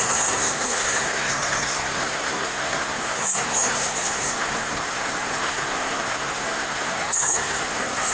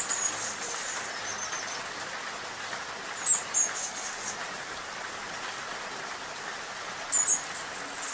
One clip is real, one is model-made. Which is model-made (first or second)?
first